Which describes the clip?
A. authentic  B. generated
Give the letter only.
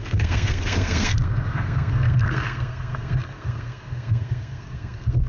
B